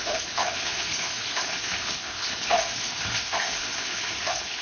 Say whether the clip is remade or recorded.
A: remade